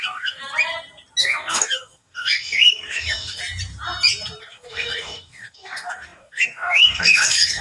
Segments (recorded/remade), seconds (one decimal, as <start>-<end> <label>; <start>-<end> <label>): 0.0-0.4 remade; 0.4-1.2 recorded; 1.2-3.4 remade; 3.4-4.4 recorded; 4.4-7.6 remade